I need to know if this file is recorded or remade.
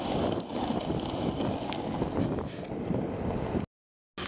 recorded